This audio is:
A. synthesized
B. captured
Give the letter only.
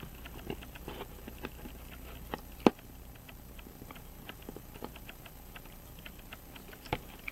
B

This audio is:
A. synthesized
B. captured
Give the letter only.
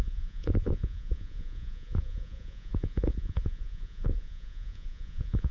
A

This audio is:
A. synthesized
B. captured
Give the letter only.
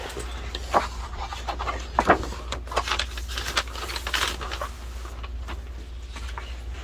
B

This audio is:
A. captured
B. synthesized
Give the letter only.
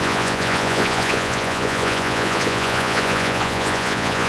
B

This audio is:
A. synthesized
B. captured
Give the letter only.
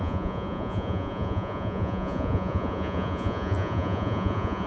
A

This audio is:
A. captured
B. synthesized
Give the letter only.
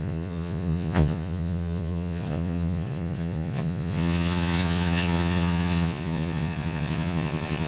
B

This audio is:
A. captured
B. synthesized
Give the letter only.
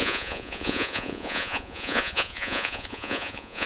B